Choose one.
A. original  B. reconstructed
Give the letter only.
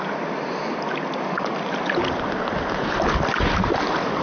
A